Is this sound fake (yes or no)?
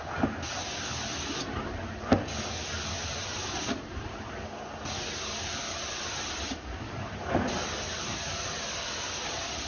no